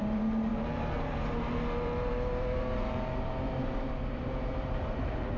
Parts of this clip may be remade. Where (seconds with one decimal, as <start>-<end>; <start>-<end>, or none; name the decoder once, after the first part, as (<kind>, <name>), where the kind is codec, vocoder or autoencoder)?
0.0-5.4 (vocoder, BigVGAN v2)